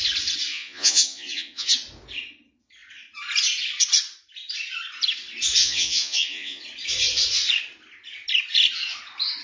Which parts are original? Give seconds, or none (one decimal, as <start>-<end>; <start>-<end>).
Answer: 0.0-0.5; 1.7-5.6; 6.6-9.4